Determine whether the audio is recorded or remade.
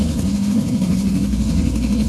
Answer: remade